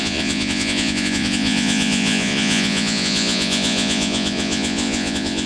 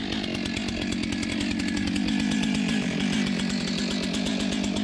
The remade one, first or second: first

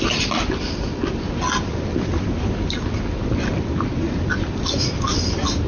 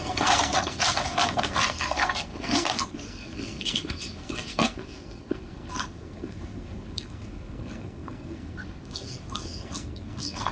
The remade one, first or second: second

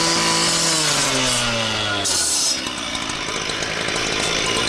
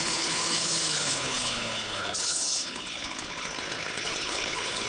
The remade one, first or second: second